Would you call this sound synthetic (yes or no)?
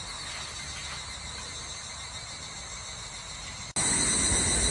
no